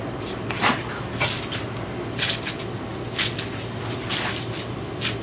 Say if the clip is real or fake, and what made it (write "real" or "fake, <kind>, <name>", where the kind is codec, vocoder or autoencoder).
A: real